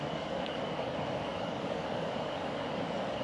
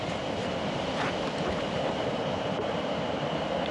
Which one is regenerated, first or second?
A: first